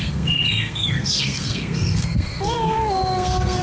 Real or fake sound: fake